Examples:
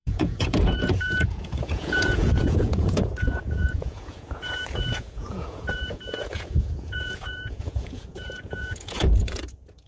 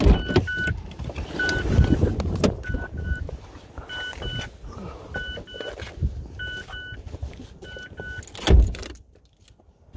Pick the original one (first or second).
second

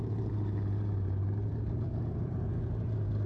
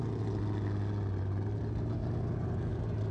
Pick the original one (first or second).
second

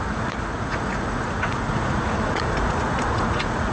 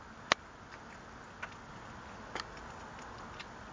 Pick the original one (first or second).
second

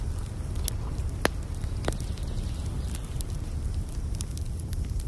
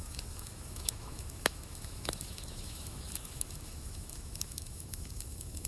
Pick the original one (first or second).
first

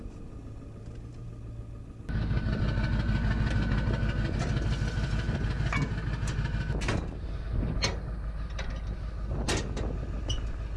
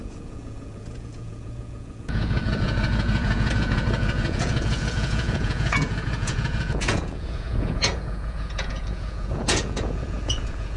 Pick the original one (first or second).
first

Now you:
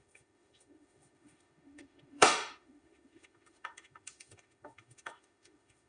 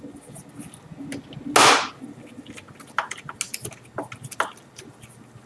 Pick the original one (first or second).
second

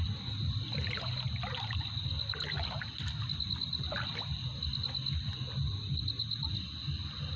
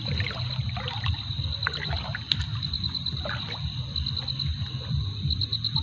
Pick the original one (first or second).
first